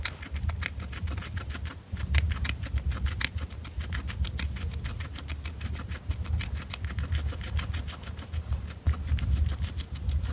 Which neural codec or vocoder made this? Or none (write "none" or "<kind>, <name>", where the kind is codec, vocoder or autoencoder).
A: none